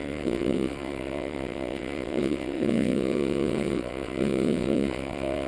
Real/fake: fake